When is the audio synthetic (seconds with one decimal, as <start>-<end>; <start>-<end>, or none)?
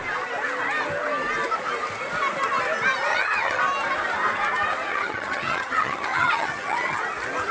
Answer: 3.1-3.6; 4.9-7.0